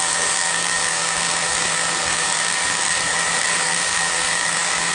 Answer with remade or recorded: remade